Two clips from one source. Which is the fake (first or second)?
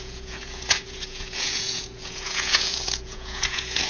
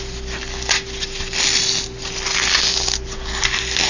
first